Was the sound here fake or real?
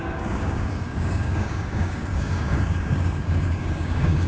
fake